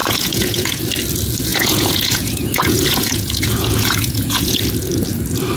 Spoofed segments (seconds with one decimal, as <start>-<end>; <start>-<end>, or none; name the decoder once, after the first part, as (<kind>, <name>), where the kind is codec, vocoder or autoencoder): 0.0-0.8 (vocoder, Vocos); 1.5-4.6